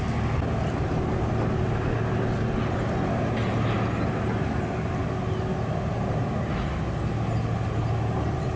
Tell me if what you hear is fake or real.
real